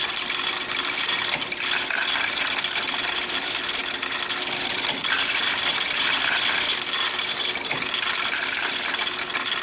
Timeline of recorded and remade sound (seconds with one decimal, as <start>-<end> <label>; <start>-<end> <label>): 0.0-9.6 recorded

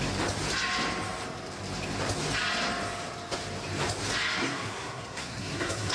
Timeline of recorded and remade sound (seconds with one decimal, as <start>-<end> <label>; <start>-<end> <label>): 0.0-4.4 recorded; 4.4-5.9 remade

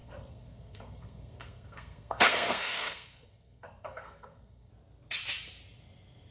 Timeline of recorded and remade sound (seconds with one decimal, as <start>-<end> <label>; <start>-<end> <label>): 0.0-4.7 remade; 4.7-6.3 recorded

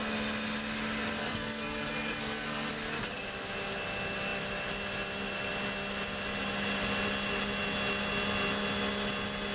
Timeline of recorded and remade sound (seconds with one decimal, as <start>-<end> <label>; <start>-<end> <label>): 0.0-1.2 recorded; 1.2-2.7 remade; 2.7-9.5 recorded

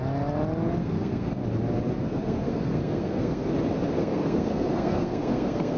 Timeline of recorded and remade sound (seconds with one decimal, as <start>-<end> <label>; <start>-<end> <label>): 0.0-0.8 recorded; 0.8-1.4 remade; 1.4-2.0 recorded; 2.0-3.5 remade; 3.5-4.0 recorded; 4.0-5.8 remade

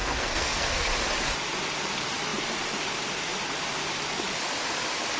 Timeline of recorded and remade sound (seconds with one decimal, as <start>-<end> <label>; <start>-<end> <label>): 0.0-0.9 remade; 0.9-5.2 recorded